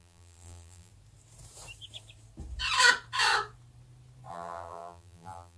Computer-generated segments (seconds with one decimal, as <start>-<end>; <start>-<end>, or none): 0.0-0.9; 4.3-5.6